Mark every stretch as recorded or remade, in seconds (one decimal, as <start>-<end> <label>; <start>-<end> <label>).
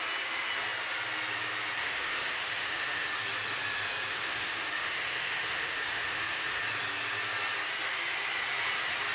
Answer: 0.0-1.8 recorded; 1.8-3.2 remade; 3.2-4.1 recorded; 4.1-6.6 remade; 6.6-9.1 recorded